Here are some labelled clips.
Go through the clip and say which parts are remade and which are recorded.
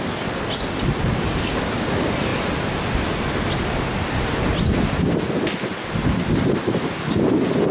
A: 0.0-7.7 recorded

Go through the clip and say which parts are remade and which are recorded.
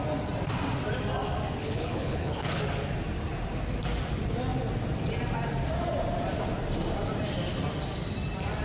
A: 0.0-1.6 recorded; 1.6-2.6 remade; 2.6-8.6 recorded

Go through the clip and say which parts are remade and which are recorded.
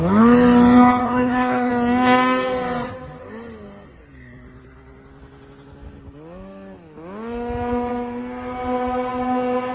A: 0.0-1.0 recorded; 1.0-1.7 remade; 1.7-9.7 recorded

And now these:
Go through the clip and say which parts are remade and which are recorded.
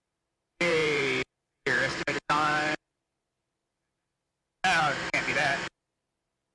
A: 0.0-3.6 remade; 3.6-4.8 recorded; 4.8-6.5 remade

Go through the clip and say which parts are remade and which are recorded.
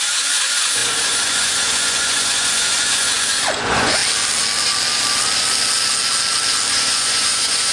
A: 0.0-4.0 remade; 4.0-6.7 recorded; 6.7-7.7 remade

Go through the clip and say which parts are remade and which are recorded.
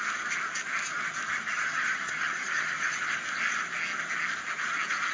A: 0.0-1.5 recorded; 1.5-3.1 remade; 3.1-5.1 recorded